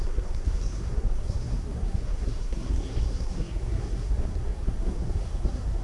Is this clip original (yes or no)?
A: no